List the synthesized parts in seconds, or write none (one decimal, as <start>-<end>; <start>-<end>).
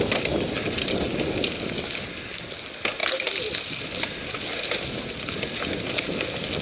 none